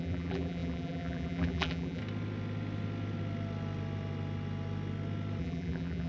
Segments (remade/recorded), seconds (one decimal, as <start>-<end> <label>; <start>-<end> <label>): 0.0-2.0 remade; 2.0-5.4 recorded; 5.4-6.1 remade